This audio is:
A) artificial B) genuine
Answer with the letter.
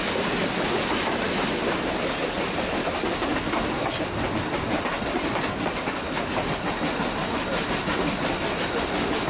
B